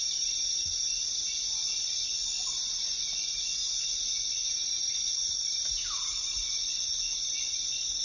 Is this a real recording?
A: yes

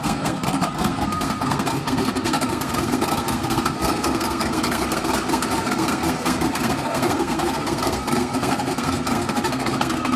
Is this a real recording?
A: no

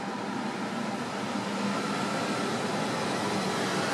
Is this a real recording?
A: yes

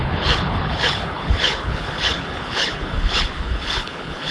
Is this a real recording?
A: no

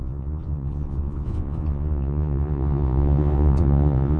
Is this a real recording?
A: no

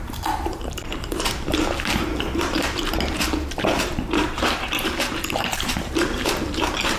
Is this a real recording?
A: no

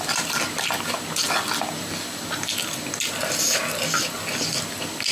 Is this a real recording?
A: yes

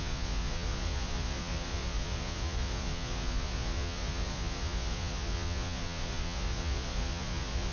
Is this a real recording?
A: no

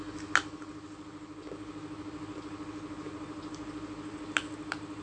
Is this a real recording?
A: yes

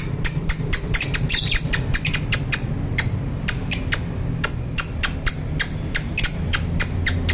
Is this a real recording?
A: yes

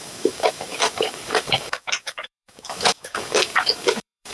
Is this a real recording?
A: no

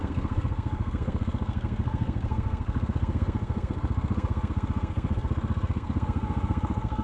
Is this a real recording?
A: no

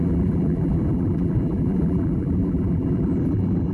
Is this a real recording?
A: no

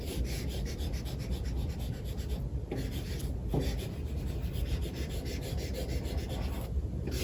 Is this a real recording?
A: yes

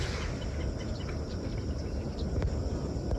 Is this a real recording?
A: yes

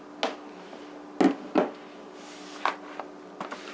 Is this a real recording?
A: yes